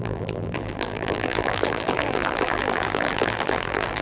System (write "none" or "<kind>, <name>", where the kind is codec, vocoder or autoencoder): vocoder, BigVGAN v2